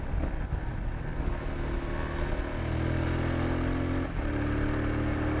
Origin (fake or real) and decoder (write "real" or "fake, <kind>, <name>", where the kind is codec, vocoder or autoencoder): real